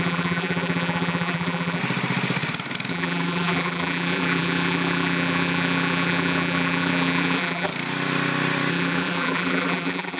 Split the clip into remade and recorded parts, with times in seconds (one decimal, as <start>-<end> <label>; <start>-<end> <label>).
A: 0.0-1.8 remade; 1.8-2.9 recorded; 2.9-7.7 remade; 7.7-8.7 recorded; 8.7-10.2 remade